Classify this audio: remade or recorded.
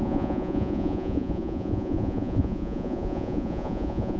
remade